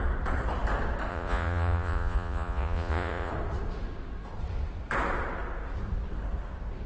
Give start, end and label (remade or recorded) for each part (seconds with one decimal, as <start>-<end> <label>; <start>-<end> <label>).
0.0-1.1 recorded; 1.1-3.3 remade; 3.3-6.9 recorded